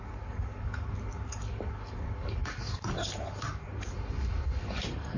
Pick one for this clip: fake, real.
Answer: fake